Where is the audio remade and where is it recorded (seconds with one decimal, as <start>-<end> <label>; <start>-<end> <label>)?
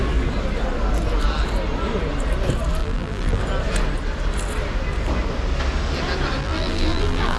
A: 0.0-2.8 recorded; 2.8-3.4 remade; 3.4-6.4 recorded; 6.4-7.4 remade